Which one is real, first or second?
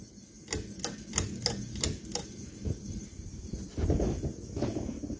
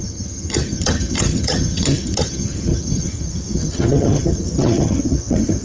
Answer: first